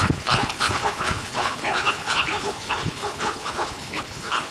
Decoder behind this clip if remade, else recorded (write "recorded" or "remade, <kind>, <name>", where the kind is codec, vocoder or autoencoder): remade, codec, HILCodec